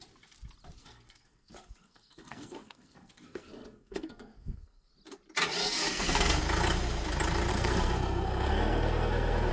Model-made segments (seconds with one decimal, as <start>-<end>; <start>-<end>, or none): 0.8-4.9; 5.6-6.4; 7.5-9.5